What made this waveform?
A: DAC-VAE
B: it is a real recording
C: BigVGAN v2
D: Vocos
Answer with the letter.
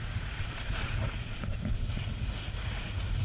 D